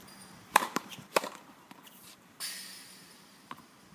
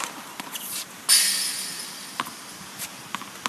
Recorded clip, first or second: second